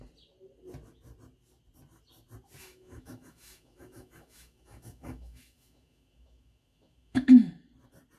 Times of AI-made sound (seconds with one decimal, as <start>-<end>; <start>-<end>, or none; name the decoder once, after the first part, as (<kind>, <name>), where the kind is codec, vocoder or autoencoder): 2.6-7.3 (autoencoder, DAC-VAE)